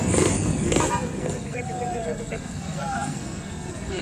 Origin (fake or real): fake